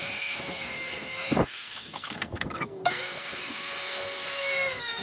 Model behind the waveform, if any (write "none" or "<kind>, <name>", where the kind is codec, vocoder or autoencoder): codec, SNAC